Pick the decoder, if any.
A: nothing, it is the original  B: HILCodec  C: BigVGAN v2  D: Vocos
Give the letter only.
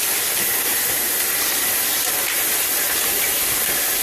A